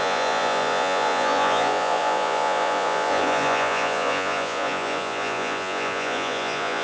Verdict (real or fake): fake